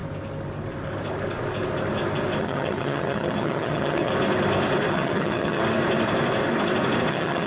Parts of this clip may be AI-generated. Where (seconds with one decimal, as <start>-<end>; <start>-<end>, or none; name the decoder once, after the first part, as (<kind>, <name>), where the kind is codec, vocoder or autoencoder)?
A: 2.4-4.1 (vocoder, HiFi-GAN); 4.9-5.6; 7.1-7.5

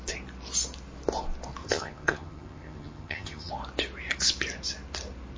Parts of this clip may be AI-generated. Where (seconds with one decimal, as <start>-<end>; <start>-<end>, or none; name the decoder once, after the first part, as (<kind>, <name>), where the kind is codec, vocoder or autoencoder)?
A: 1.6-3.5 (vocoder, HiFi-GAN)

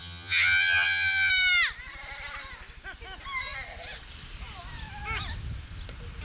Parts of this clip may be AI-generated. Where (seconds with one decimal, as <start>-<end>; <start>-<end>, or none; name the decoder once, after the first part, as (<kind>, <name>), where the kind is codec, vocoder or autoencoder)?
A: 0.0-1.3 (vocoder, HiFi-GAN)

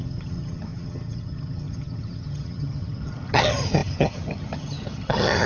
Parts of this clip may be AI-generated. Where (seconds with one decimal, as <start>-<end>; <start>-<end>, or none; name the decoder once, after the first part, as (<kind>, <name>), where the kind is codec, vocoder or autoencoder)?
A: 0.0-5.5 (vocoder, HiFi-GAN)

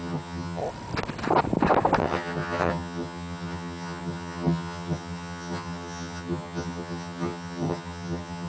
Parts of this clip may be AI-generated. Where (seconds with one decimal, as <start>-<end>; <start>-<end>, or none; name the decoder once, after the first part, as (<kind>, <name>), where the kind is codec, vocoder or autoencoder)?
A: 0.0-0.6 (vocoder, HiFi-GAN); 2.0-8.5